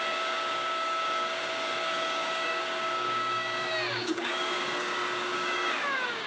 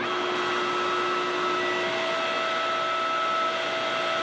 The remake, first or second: first